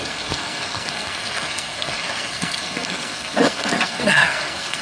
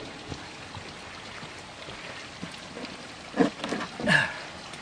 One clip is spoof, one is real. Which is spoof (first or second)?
first